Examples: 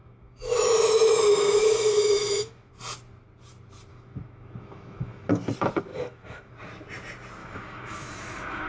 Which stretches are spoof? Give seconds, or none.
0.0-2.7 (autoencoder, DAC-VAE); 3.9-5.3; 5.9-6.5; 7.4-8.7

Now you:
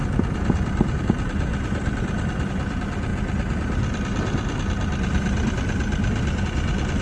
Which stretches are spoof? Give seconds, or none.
1.5-2.5 (vocoder, BigVGAN v2)

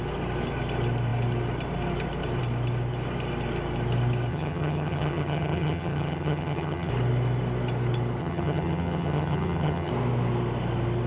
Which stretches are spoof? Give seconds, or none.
4.3-6.9 (vocoder, HiFi-GAN); 8.2-9.9

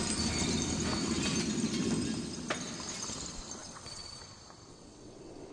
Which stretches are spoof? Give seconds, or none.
3.6-4.2 (vocoder, WaveNeXt); 4.7-5.5

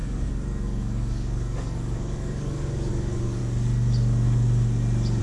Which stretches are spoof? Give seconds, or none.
0.0-3.4 (codec, DAC)

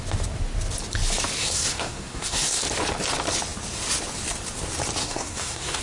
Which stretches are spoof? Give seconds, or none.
1.4-2.6 (codec, SNAC); 5.0-5.8

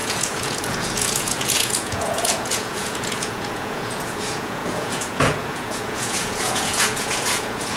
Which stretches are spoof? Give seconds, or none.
0.0-7.8 (vocoder, Vocos)

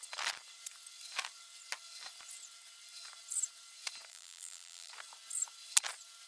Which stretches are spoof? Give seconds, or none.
4.1-4.9 (vocoder, BigVGAN v2)